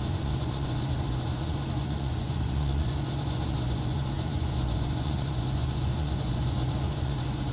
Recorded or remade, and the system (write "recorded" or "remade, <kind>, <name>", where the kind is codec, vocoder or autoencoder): remade, vocoder, Vocos